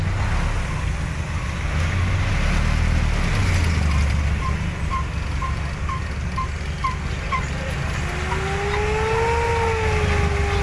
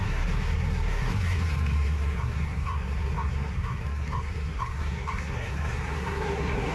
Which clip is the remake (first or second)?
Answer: second